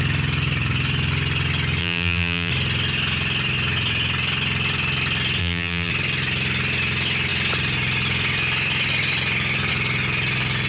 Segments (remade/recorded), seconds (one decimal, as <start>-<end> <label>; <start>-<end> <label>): 0.0-1.8 recorded; 1.8-2.5 remade; 2.5-5.4 recorded; 5.4-5.9 remade; 5.9-10.7 recorded